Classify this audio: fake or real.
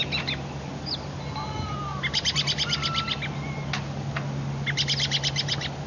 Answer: real